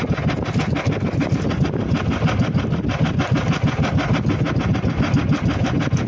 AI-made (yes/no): no